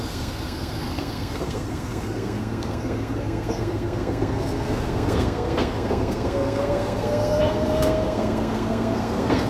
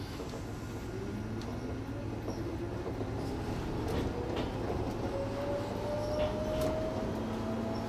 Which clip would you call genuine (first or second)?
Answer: second